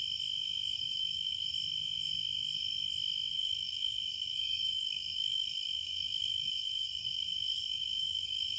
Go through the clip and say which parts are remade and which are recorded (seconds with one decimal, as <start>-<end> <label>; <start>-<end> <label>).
0.0-0.8 recorded; 0.8-1.4 remade; 1.4-3.3 recorded; 3.3-8.6 remade